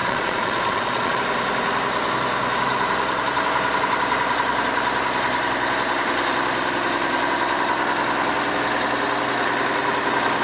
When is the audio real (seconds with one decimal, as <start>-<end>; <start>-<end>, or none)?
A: 1.2-10.4